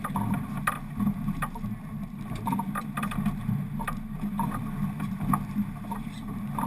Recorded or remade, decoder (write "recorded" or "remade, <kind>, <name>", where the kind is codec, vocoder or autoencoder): recorded